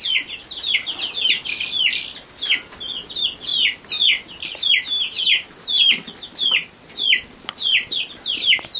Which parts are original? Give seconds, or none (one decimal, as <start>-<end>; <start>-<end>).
0.0-8.8